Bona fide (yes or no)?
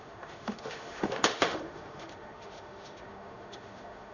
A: no